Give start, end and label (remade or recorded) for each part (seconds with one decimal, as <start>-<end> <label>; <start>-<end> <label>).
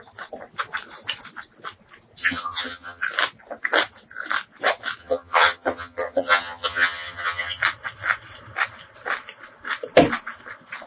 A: 0.0-2.2 recorded; 2.2-3.0 remade; 3.0-5.0 recorded; 5.0-7.6 remade; 7.6-10.9 recorded